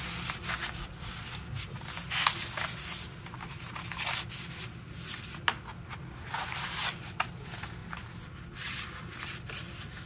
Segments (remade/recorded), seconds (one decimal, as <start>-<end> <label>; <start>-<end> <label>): 0.0-10.1 recorded